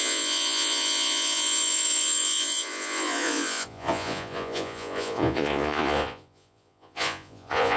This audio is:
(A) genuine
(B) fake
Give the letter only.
B